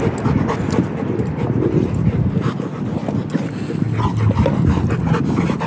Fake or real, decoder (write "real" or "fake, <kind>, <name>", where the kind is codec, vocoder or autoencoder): real